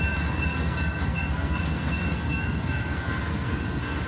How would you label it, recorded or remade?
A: remade